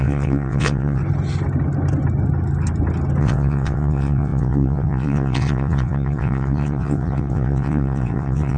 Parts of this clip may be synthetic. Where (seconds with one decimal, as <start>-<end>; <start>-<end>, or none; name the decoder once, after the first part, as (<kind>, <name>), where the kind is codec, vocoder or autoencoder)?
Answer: 0.0-1.0 (vocoder, WaveNeXt); 3.2-8.6